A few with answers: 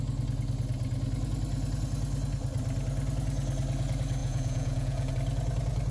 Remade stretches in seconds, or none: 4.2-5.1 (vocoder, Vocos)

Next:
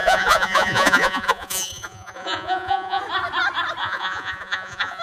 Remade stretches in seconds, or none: 0.0-3.0 (vocoder, Vocos); 3.8-5.0

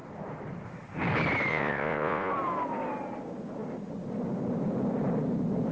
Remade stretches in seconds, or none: 1.5-2.3 (vocoder, Vocos)

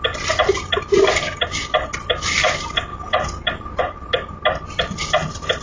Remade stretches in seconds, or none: none

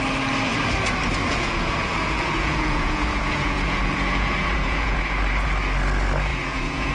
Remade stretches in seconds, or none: 1.2-5.0 (vocoder, Vocos); 6.3-6.9

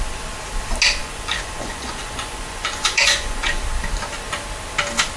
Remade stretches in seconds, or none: 1.0-3.6 (vocoder, Vocos)

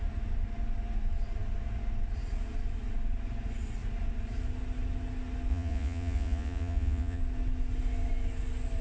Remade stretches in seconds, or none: 5.5-7.2 (vocoder, Vocos)